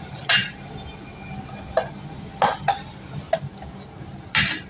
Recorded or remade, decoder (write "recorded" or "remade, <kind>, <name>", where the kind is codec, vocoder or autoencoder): recorded